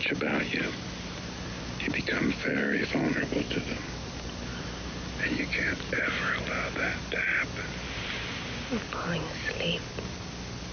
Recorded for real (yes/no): yes